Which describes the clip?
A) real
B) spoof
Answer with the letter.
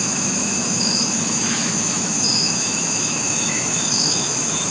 B